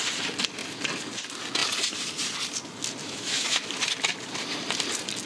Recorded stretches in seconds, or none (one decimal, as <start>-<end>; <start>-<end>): 0.0-3.0; 3.7-5.3

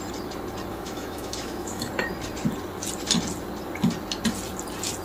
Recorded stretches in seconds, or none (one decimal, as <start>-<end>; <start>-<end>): 0.0-0.7; 1.9-5.0

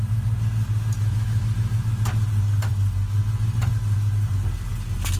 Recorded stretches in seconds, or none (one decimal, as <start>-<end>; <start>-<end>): 0.0-1.0; 1.8-5.2